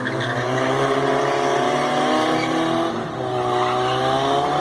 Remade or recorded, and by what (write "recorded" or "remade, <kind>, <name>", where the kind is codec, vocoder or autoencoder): recorded